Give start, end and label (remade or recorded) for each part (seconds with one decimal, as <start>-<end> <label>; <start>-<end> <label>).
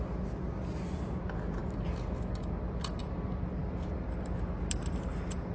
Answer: 0.0-5.5 recorded